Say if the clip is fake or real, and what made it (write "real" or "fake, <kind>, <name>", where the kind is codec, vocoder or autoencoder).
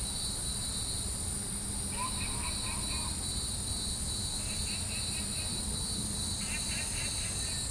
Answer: real